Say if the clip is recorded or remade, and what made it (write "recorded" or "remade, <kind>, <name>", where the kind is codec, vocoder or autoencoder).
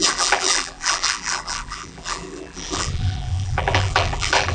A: remade, vocoder, BigVGAN v2